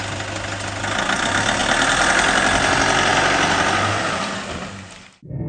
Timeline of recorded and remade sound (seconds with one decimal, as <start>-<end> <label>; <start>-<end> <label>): 0.0-5.5 recorded